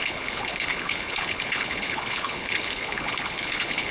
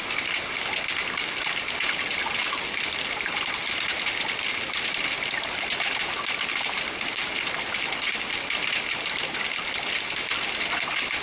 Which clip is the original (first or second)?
second